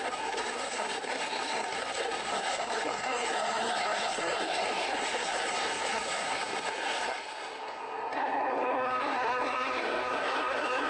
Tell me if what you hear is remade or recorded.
remade